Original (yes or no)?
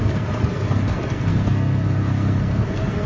no